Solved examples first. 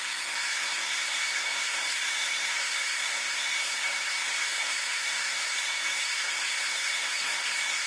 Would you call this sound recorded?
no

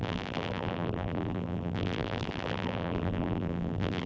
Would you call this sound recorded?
no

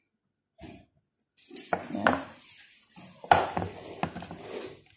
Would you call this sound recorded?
yes